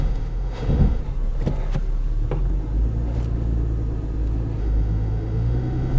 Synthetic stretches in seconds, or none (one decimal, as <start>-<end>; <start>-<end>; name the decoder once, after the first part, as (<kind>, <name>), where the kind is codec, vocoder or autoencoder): 0.0-1.0 (autoencoder, DAC-VAE); 4.6-6.0